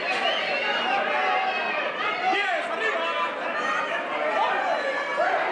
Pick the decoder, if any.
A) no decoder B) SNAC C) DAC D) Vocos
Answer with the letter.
A